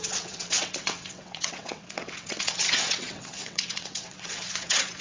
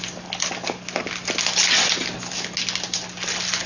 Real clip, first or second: second